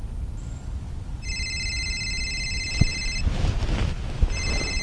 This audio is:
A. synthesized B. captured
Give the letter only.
B